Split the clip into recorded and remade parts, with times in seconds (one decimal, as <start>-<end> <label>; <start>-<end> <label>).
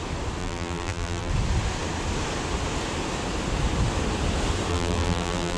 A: 0.0-0.4 recorded; 0.4-1.3 remade; 1.3-4.7 recorded; 4.7-5.6 remade